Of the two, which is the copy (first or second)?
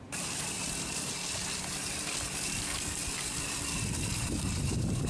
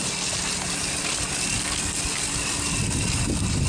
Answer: first